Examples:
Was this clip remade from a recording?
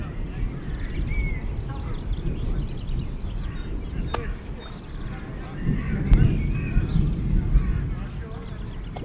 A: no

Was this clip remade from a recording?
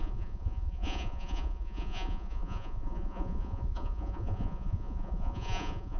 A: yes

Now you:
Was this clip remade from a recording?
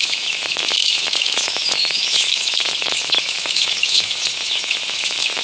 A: yes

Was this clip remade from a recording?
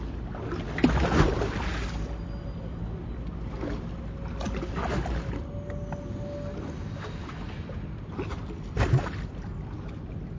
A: no